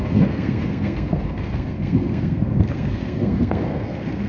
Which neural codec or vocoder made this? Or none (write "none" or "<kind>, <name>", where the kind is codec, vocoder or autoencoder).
codec, SNAC